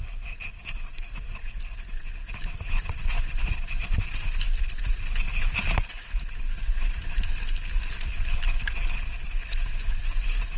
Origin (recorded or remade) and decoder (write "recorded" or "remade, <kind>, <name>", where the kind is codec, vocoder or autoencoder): recorded